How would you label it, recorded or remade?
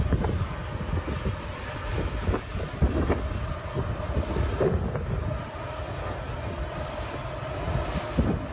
recorded